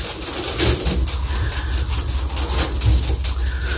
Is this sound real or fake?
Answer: real